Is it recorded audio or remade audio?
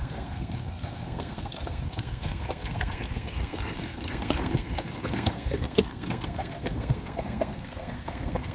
remade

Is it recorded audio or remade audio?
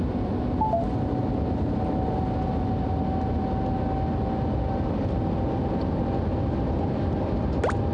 recorded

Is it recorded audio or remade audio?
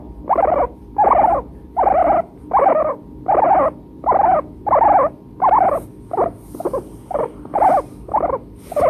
recorded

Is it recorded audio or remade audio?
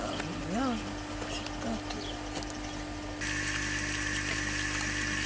recorded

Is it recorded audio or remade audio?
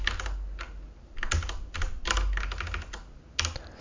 recorded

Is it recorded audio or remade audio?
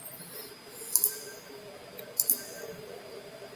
recorded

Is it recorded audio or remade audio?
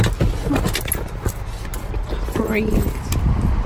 recorded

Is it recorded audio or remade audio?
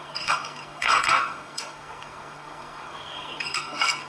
remade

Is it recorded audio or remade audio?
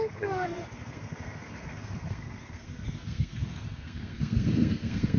remade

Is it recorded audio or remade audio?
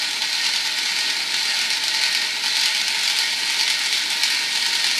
recorded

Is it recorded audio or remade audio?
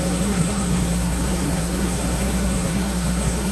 remade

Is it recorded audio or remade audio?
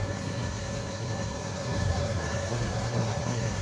remade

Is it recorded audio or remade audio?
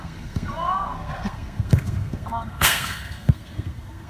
remade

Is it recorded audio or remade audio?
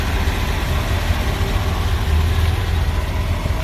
recorded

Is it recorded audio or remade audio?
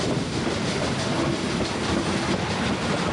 recorded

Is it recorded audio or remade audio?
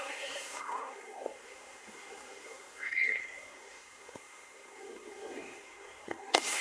remade